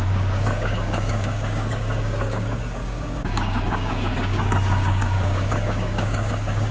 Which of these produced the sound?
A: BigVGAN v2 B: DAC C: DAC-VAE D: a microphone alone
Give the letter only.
B